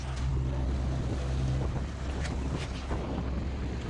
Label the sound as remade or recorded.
recorded